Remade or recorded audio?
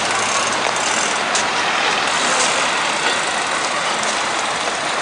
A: recorded